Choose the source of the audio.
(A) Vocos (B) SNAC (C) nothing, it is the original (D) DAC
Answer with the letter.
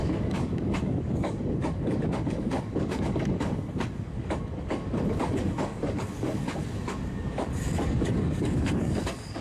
D